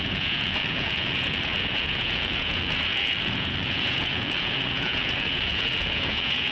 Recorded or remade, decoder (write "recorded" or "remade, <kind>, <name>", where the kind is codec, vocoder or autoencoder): remade, vocoder, Vocos